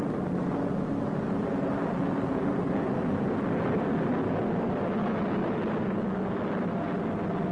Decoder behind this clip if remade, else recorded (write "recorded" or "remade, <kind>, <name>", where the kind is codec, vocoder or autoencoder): recorded